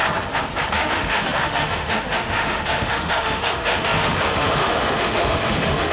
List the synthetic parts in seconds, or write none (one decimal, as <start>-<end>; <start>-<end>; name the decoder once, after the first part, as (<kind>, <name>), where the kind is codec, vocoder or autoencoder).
0.7-5.9 (autoencoder, DAC-VAE)